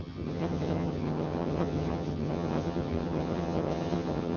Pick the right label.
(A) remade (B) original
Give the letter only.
A